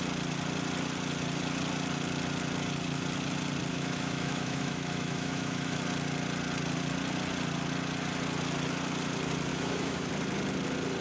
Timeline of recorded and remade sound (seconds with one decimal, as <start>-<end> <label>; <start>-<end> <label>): 0.0-3.7 recorded; 3.7-5.8 remade; 5.8-9.5 recorded; 9.5-10.1 remade; 10.1-11.0 recorded